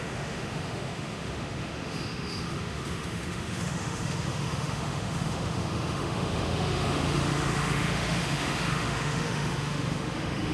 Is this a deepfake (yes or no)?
yes